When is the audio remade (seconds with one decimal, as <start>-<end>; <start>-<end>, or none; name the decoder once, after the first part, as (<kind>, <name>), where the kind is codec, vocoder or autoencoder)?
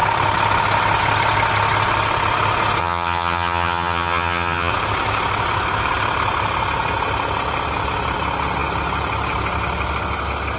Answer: 2.8-4.7 (vocoder, HiFi-GAN)